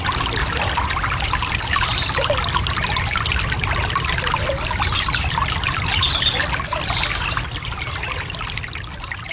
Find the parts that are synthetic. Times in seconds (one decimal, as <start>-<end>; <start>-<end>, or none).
none

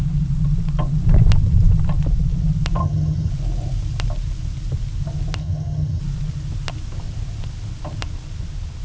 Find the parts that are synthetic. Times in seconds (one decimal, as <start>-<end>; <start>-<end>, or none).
2.8-3.3; 5.4-6.0

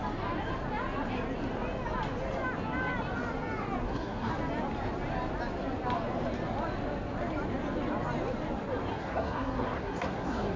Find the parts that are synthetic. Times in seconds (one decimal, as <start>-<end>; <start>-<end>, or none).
3.8-4.3; 8.9-10.6

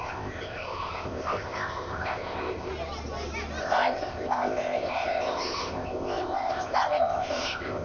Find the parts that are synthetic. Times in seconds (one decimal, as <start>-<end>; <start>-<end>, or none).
0.0-2.7; 3.6-7.8